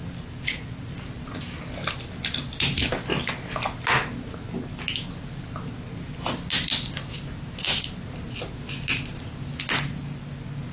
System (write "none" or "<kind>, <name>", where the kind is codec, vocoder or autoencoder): none